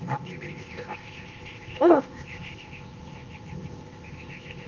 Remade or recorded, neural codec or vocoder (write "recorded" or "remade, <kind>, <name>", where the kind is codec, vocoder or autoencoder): remade, codec, ZipCodec